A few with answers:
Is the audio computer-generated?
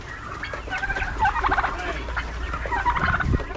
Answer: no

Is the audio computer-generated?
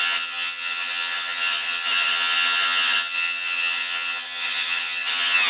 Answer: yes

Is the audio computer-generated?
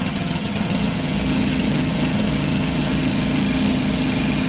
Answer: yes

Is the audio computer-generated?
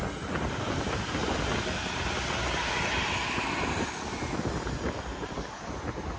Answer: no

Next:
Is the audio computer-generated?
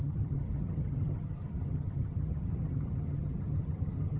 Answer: yes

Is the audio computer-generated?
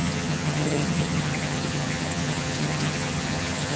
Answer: yes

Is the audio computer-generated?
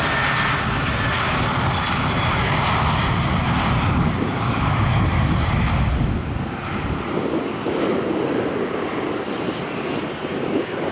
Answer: no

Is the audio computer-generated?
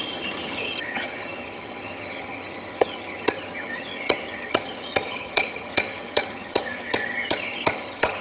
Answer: yes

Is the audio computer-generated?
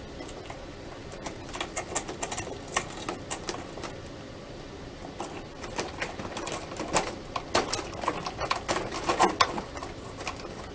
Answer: no